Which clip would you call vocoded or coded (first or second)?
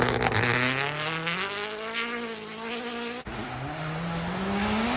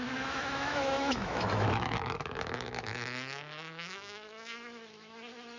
second